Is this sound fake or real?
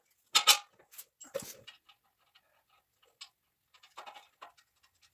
real